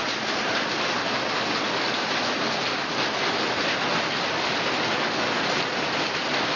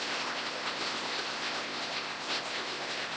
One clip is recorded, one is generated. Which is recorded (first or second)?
first